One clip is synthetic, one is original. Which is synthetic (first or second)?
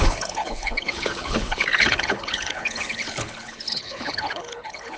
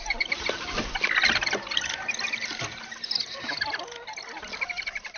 first